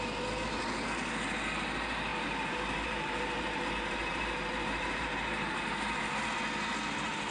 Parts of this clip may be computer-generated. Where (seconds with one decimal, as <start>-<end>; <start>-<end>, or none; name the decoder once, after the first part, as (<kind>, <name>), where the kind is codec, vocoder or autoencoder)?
2.1-6.2 (vocoder, BigVGAN v2)